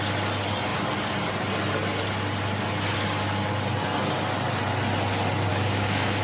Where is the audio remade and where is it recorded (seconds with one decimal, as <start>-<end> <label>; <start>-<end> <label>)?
0.0-5.5 recorded; 5.5-6.2 remade